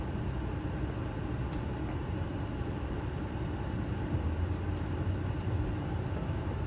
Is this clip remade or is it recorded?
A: recorded